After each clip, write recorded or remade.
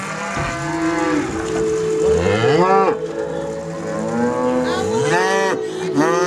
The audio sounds recorded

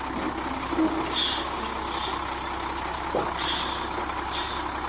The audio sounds recorded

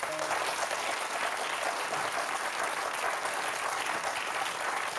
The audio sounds recorded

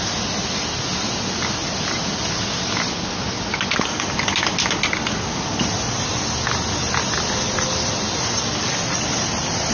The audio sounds recorded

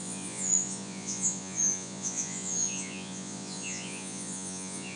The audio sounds remade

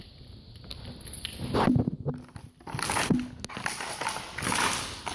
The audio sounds recorded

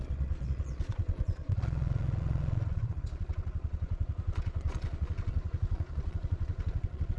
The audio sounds remade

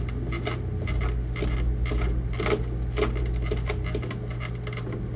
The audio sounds recorded